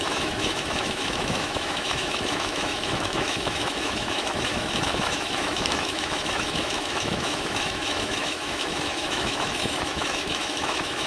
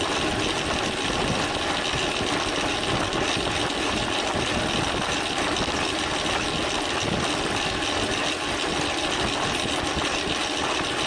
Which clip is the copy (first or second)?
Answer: first